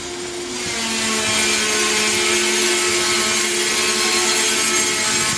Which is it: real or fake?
real